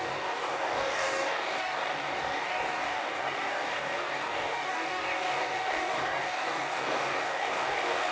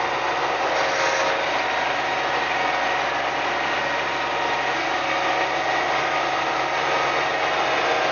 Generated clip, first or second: first